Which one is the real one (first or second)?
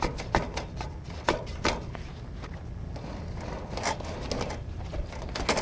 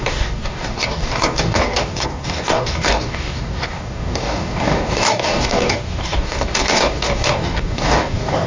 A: first